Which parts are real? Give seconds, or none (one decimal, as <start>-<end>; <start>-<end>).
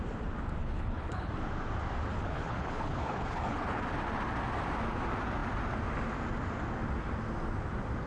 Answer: 0.0-0.6; 1.3-2.1; 3.8-8.1